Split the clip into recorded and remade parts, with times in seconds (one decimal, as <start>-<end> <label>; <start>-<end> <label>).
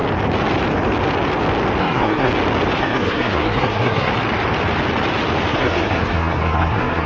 0.0-1.8 recorded; 1.8-2.3 remade; 2.3-2.8 recorded; 2.8-4.1 remade; 4.1-5.5 recorded; 5.5-7.1 remade